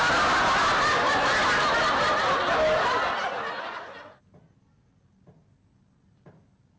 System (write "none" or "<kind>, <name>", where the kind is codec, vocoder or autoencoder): none